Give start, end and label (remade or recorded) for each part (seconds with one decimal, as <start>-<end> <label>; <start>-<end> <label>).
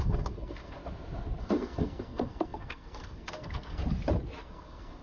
0.0-0.8 remade; 0.8-1.4 recorded; 1.4-3.8 remade; 3.8-4.4 recorded; 4.4-5.0 remade